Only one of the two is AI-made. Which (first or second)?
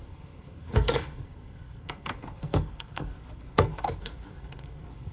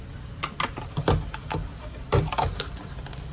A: first